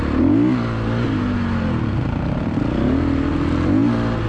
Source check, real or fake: real